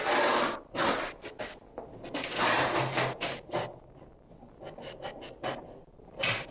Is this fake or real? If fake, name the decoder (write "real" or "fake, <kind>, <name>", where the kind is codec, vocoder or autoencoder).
real